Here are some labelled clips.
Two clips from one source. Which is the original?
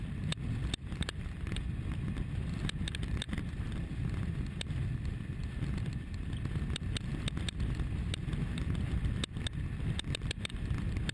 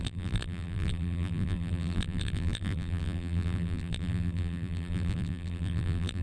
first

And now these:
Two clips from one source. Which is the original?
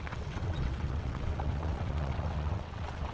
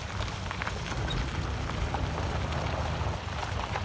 second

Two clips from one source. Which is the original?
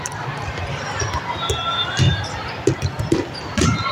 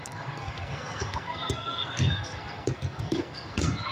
first